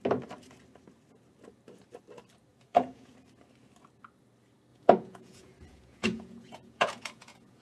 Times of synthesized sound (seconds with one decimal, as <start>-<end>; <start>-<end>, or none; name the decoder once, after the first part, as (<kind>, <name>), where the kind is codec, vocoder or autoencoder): 2.5-3.1 (vocoder, Vocos); 4.7-7.6